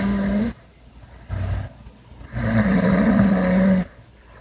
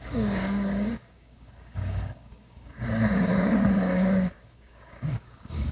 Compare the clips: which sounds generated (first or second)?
second